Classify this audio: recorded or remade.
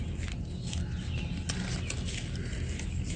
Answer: recorded